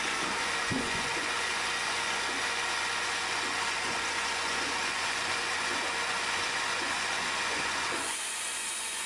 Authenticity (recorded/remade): remade